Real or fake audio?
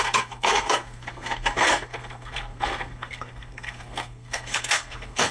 fake